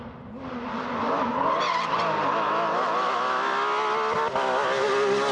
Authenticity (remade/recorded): recorded